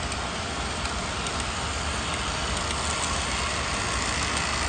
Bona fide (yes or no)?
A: yes